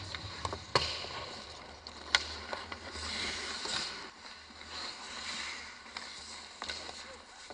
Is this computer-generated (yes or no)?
no